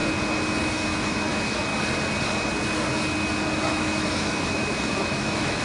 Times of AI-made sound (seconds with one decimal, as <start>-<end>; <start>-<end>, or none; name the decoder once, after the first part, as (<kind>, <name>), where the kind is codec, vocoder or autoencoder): 0.6-1.7 (autoencoder, DAC-VAE); 3.7-5.6